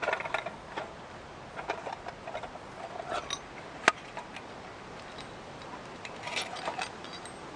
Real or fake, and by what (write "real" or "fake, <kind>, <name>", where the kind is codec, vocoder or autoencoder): real